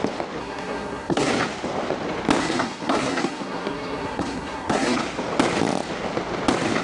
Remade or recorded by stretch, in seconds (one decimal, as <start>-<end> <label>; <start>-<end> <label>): 0.0-0.4 recorded; 0.4-1.3 remade; 1.3-2.4 recorded; 2.4-5.0 remade; 5.0-6.8 recorded